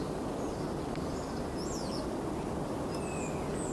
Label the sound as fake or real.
real